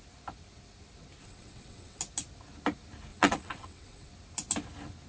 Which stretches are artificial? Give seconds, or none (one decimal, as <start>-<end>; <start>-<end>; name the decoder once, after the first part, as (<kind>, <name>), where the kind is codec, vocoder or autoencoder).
1.2-2.0 (vocoder, WaveNeXt); 3.1-4.1